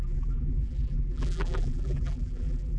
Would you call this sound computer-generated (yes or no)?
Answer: yes